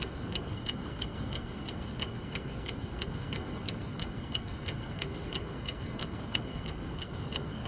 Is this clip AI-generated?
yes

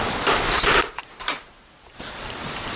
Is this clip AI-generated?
no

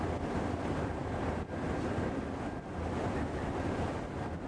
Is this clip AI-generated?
no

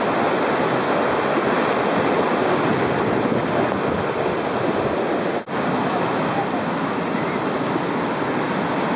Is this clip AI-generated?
no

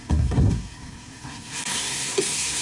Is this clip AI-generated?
yes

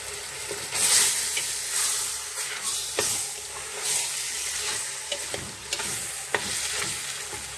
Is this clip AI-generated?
no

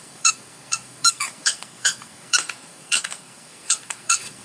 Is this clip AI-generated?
yes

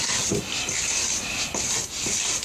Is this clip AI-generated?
no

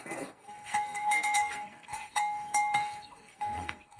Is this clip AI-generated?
yes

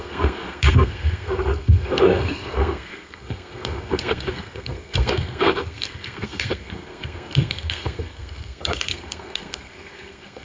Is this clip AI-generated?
yes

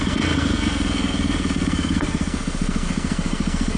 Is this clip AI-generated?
yes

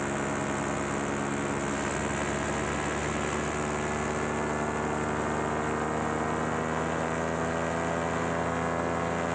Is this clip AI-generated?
no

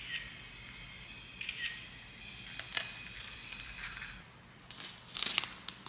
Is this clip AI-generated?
no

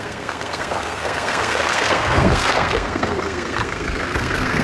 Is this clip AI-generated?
yes